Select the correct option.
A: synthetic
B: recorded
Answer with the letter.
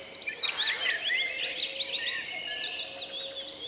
B